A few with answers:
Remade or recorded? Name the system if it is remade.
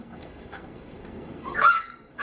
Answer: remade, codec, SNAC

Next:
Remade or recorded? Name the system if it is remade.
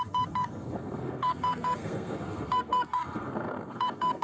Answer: remade, codec, SNAC